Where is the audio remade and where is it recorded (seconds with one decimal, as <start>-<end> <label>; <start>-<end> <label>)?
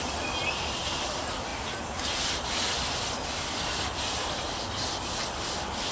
0.0-5.9 recorded